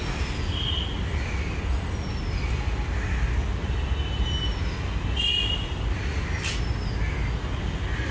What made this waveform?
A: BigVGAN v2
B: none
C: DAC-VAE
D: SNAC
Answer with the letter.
B